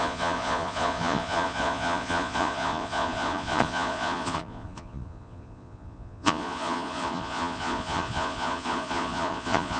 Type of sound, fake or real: fake